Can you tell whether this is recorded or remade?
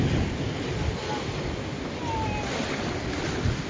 recorded